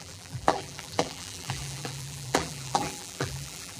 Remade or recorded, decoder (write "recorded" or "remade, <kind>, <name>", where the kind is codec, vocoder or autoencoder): remade, vocoder, BigVGAN v2